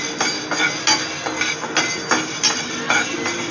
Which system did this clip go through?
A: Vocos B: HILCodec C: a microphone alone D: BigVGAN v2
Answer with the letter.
C